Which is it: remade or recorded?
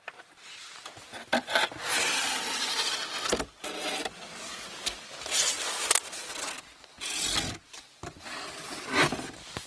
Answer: recorded